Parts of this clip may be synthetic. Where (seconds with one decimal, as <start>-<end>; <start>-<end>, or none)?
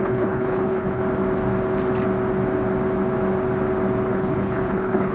0.0-1.0; 4.1-5.1